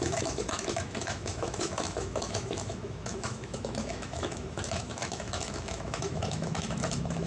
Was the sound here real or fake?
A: fake